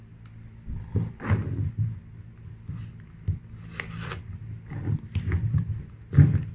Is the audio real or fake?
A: real